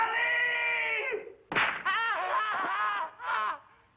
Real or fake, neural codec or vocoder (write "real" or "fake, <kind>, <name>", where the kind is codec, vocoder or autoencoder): real